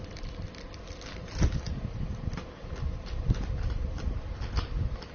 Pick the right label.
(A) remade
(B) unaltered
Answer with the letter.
B